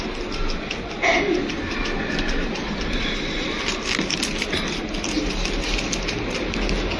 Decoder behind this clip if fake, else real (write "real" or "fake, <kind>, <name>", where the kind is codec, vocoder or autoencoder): real